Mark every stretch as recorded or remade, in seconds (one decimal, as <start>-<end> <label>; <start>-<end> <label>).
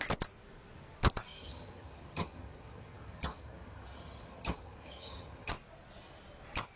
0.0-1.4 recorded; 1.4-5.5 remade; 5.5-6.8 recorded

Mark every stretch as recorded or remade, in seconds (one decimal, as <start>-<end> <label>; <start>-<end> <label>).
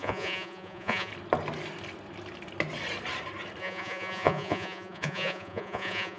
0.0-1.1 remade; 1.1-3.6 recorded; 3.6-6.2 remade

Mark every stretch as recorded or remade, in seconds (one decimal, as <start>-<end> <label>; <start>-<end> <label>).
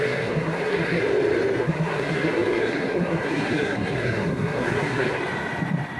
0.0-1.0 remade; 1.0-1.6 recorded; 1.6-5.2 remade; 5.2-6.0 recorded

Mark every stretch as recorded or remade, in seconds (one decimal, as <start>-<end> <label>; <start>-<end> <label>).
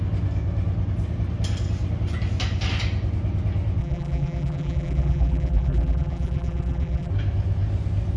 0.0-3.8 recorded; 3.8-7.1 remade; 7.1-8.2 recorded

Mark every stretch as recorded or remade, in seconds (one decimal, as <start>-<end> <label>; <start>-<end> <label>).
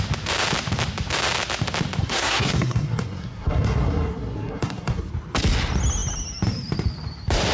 0.0-2.0 recorded; 2.0-5.1 remade; 5.1-7.5 recorded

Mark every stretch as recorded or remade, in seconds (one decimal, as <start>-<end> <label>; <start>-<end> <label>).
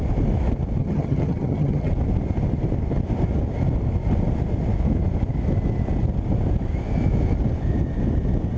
0.0-0.8 recorded; 0.8-1.9 remade; 1.9-8.6 recorded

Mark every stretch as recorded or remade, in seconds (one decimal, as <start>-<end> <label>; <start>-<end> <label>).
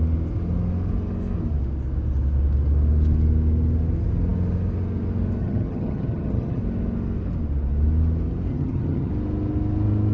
0.0-5.4 recorded; 5.4-6.6 remade; 6.6-8.5 recorded; 8.5-9.1 remade; 9.1-10.1 recorded